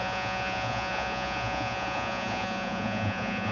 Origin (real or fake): fake